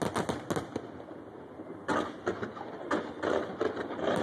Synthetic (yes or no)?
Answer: no